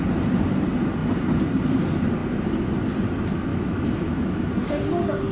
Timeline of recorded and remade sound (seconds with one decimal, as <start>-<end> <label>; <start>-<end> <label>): 0.0-3.5 recorded; 3.5-4.5 remade; 4.5-5.3 recorded